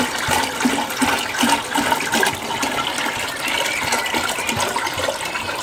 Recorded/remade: recorded